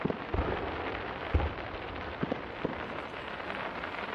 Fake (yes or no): yes